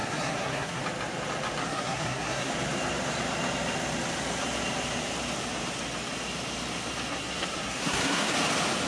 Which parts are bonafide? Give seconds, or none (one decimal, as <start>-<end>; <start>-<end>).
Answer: 0.8-1.6; 2.5-7.1; 8.3-8.9